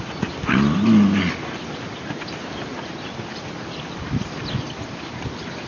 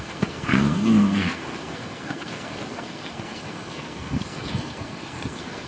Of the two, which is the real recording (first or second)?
first